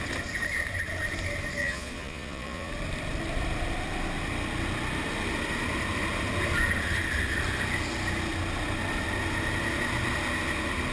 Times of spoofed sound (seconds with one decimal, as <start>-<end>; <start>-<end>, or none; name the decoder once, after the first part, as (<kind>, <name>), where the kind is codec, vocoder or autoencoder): 1.6-2.7 (vocoder, Vocos)